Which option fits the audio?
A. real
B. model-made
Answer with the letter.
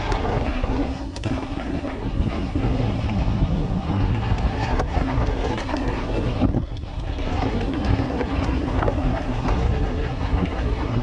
B